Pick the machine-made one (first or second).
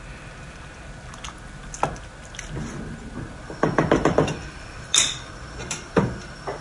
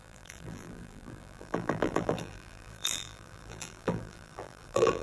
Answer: second